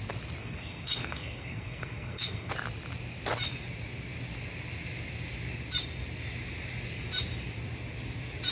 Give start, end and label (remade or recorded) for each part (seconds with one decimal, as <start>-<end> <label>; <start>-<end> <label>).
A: 0.0-0.4 recorded; 0.4-2.5 remade; 2.5-8.5 recorded